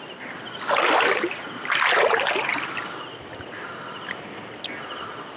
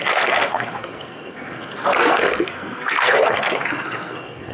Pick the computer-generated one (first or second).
second